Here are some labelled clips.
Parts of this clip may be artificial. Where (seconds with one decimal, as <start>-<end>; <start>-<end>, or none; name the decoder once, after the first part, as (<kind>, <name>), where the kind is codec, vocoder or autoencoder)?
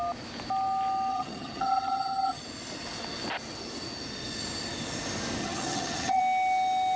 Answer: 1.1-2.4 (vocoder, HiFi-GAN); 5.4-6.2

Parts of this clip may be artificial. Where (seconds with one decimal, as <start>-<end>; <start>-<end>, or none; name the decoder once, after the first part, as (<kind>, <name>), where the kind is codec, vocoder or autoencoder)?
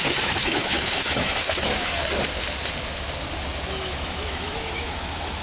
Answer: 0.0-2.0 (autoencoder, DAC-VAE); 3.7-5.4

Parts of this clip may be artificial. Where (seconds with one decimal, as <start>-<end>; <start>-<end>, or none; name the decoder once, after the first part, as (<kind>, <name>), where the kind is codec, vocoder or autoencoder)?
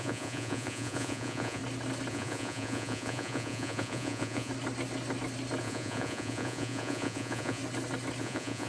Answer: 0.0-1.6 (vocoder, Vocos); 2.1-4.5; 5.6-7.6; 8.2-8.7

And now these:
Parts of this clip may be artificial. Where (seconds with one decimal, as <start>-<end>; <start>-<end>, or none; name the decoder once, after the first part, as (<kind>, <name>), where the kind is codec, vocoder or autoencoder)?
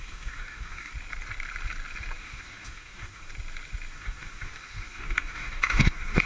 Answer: 0.0-0.9 (codec, DAC); 2.2-3.3; 3.9-6.3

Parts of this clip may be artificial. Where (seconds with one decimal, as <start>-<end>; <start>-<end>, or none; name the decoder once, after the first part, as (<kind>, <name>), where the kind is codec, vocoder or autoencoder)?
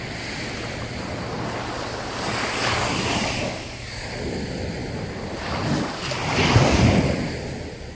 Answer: 2.6-4.2 (codec, DAC)